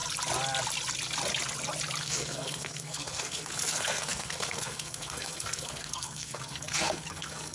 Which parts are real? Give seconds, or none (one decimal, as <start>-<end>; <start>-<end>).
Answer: 0.0-2.0